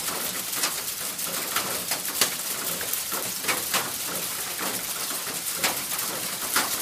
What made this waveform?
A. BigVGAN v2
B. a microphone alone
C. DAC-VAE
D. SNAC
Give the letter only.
A